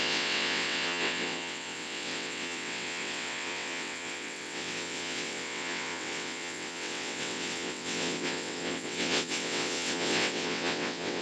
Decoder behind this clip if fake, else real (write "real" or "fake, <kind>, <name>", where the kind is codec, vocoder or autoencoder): fake, vocoder, WaveNeXt